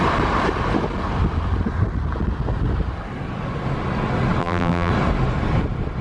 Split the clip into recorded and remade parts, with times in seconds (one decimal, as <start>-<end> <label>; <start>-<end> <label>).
0.0-4.4 recorded; 4.4-4.9 remade; 4.9-6.0 recorded